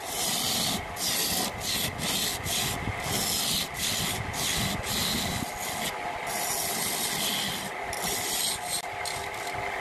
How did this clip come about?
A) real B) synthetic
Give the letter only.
A